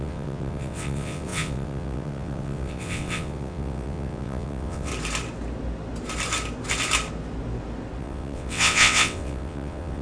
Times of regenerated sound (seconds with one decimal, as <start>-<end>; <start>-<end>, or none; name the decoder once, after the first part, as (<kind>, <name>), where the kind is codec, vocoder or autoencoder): 0.0-4.9 (vocoder, WaveNeXt); 8.0-10.0